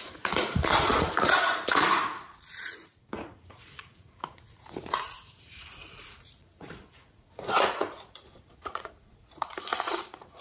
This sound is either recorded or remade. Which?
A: remade